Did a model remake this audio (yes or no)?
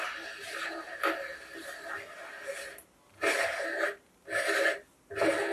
no